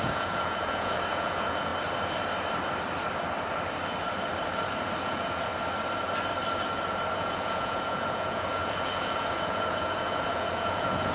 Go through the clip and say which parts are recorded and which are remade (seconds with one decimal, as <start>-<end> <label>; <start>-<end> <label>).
0.0-1.7 remade; 1.7-5.0 recorded; 5.0-5.5 remade; 5.5-7.2 recorded; 7.2-11.1 remade